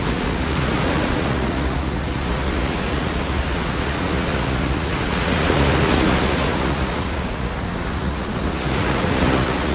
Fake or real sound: fake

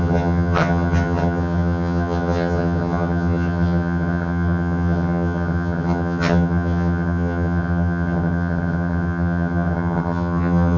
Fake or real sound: fake